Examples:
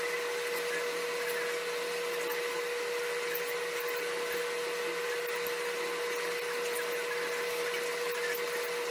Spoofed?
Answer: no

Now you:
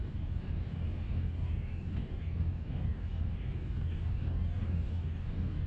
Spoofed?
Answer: yes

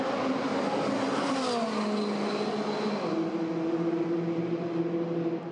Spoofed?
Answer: no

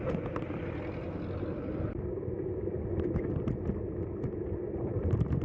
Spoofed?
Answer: no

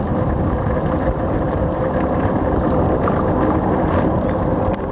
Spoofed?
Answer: no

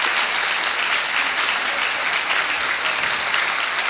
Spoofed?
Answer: no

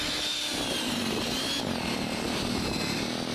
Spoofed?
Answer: no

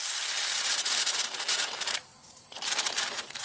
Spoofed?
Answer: yes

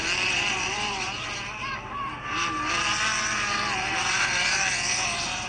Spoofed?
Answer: yes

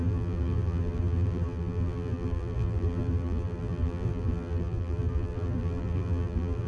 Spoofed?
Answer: yes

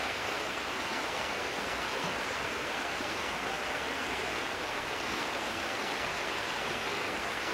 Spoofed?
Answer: yes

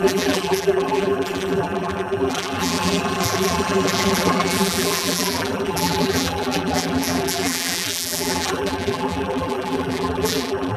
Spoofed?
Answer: yes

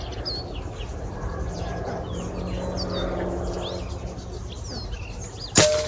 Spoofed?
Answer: no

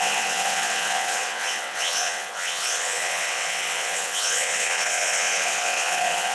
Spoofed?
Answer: yes